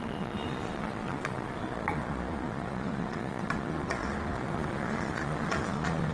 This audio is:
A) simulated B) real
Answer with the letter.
A